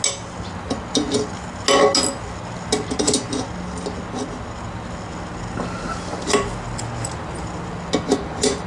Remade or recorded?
recorded